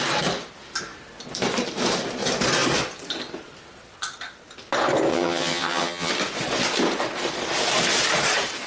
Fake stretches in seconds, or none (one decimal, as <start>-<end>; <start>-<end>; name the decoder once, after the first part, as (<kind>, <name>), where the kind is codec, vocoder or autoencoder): 5.1-6.1 (vocoder, HiFi-GAN)